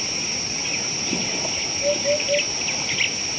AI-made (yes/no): no